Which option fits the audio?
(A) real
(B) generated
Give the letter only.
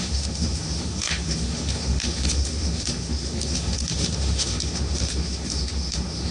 B